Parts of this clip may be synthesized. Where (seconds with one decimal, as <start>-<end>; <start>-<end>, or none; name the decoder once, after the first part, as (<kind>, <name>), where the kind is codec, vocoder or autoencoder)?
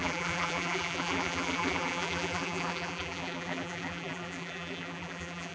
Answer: 0.0-5.5 (vocoder, BigVGAN v2)